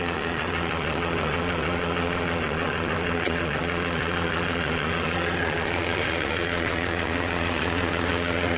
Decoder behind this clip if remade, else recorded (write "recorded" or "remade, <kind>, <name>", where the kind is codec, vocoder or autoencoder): remade, vocoder, Vocos